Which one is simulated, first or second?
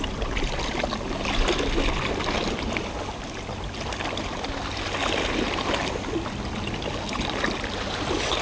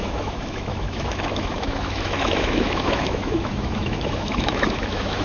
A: second